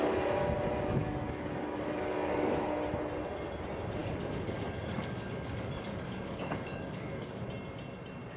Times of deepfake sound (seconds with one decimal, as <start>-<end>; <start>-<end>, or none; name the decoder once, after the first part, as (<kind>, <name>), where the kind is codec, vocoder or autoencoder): 1.0-2.5 (codec, DAC); 4.0-7.4